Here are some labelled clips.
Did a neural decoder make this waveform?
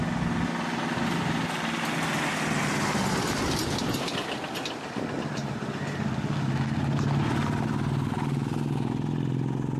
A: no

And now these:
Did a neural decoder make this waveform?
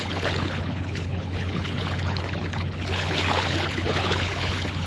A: yes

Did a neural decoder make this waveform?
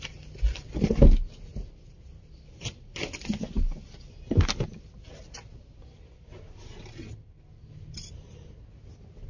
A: no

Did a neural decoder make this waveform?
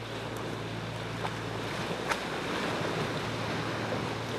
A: no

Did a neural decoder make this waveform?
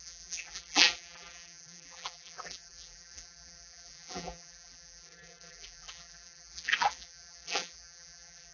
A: yes